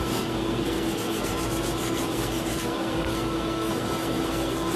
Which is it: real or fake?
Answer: fake